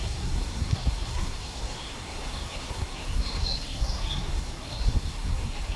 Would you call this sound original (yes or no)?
no